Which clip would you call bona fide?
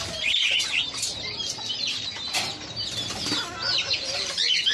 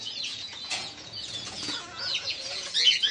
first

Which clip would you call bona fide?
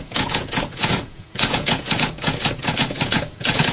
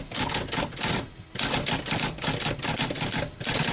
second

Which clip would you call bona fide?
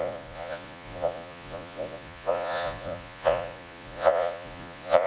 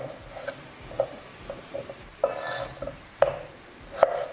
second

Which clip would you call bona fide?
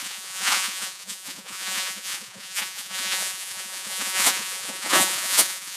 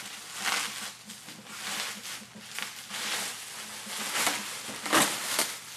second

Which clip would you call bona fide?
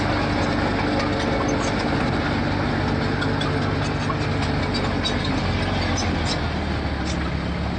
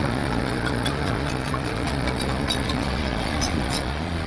first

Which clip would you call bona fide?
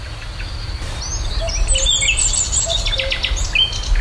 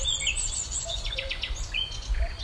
first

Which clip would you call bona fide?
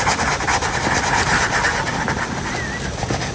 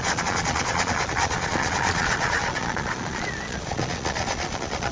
first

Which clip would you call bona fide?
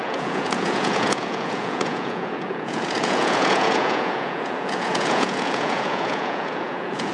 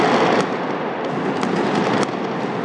second